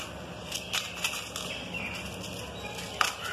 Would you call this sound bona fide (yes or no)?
yes